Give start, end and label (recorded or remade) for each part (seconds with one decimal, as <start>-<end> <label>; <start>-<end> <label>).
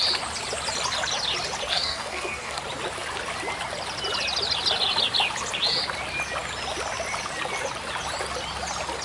0.0-1.7 recorded; 1.7-2.6 remade; 2.6-9.0 recorded